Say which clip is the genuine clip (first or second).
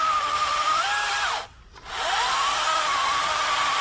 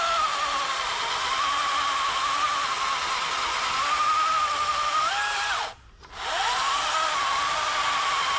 second